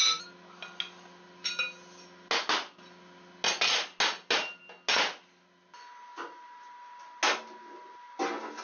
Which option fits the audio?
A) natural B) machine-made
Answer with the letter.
A